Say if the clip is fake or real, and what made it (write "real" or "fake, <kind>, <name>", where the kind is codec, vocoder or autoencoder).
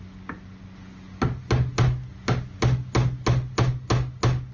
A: real